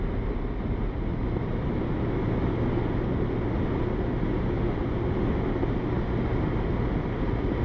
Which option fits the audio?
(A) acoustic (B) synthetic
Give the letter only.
A